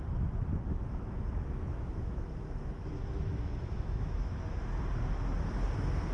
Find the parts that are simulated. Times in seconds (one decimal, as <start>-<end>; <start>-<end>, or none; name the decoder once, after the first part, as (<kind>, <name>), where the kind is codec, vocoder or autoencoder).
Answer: 0.7-4.4 (autoencoder, DAC-VAE)